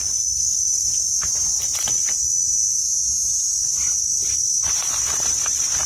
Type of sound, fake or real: real